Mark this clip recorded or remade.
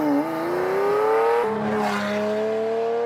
recorded